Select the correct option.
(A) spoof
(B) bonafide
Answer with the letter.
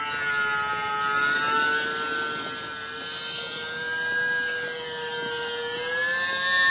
B